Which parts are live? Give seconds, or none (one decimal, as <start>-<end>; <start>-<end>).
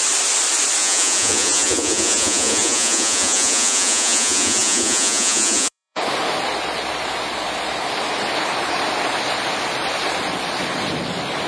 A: 0.0-0.8; 6.0-11.5